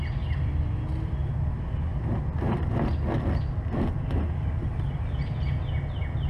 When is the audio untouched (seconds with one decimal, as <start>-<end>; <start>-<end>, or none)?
0.0-6.3